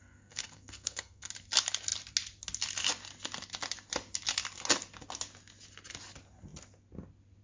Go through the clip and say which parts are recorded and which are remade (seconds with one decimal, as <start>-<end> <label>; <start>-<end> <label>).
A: 0.0-1.3 remade; 1.3-7.4 recorded